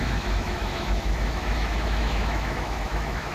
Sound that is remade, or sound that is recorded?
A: remade